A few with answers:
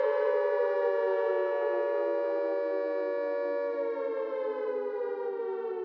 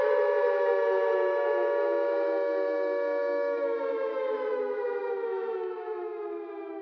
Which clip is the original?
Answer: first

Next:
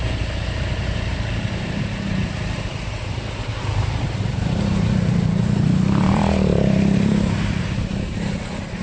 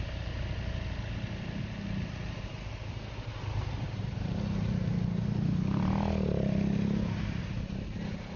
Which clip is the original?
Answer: second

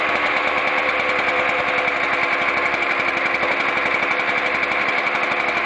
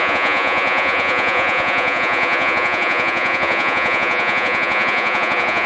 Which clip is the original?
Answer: first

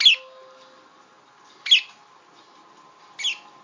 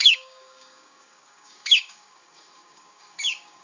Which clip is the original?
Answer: first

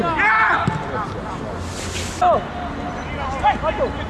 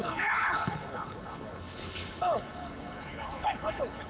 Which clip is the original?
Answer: first